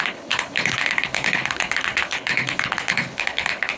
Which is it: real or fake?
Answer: fake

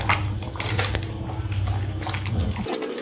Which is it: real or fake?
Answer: real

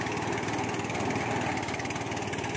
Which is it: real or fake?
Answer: real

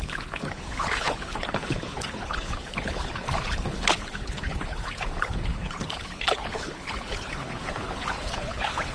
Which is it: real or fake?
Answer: fake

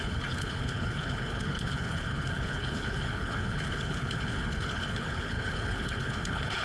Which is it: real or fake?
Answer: fake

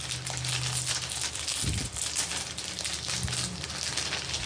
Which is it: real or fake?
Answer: real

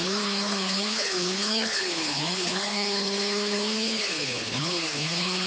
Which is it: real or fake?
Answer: fake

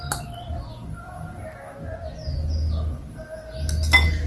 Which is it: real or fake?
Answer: real